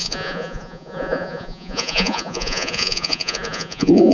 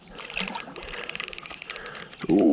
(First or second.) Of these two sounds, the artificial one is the first